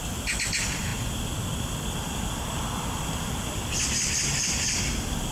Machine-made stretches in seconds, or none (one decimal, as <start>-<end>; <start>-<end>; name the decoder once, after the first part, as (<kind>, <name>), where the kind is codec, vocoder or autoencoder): none